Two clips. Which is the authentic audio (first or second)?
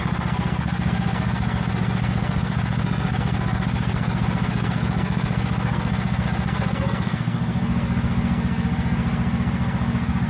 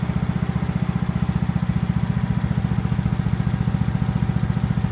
second